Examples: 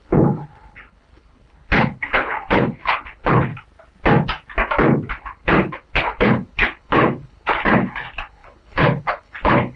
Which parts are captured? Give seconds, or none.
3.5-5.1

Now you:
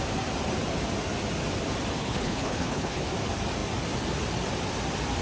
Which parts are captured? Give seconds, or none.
0.0-2.0; 3.1-5.2